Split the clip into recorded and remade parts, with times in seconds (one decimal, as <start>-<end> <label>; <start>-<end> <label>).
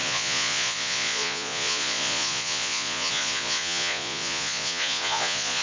0.0-5.6 remade